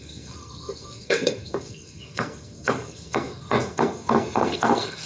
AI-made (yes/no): yes